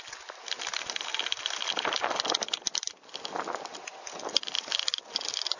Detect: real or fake real